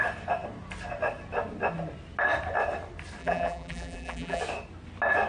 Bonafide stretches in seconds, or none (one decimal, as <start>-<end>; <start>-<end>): 0.0-3.2; 4.4-5.3